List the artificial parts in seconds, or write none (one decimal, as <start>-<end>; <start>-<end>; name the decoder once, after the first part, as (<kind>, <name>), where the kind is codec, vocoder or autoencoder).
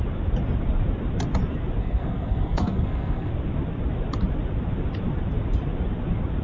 1.8-3.3 (codec, SNAC)